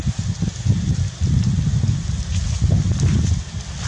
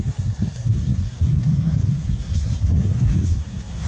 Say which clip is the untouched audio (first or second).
first